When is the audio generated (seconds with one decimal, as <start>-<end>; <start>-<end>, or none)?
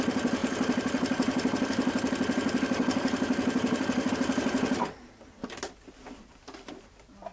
0.0-5.4; 6.7-7.3